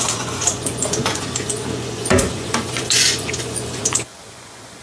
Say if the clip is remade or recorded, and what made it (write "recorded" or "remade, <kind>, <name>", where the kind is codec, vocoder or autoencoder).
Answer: remade, vocoder, Vocos